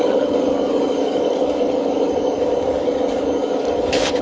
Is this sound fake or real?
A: fake